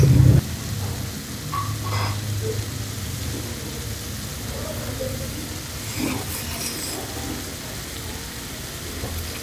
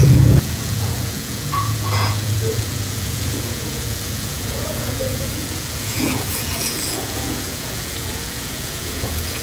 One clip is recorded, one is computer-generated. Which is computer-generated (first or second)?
second